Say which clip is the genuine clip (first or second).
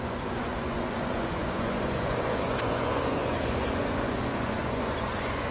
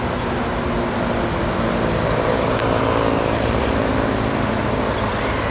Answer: second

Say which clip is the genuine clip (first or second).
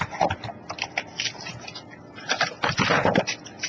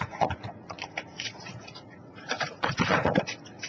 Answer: first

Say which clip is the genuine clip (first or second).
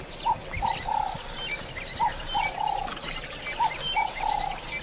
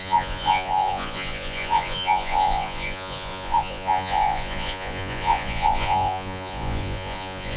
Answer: first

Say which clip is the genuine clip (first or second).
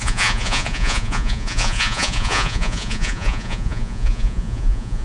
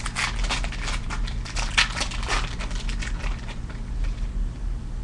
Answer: second